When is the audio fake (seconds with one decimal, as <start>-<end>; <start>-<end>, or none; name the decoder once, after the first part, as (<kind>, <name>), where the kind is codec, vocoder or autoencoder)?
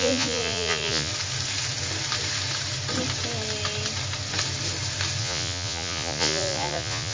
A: 0.0-1.1 (vocoder, Vocos); 5.2-7.1